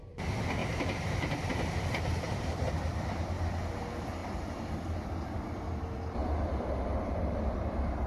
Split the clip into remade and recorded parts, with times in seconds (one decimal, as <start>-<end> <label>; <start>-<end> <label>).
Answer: 0.0-0.6 recorded; 0.6-1.1 remade; 1.1-4.2 recorded; 4.2-4.7 remade; 4.7-6.2 recorded; 6.2-7.0 remade; 7.0-8.1 recorded